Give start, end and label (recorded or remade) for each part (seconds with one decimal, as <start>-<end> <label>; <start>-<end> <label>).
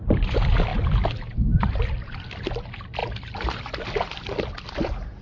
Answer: 0.0-5.2 recorded